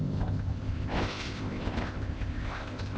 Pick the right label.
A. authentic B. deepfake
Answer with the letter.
B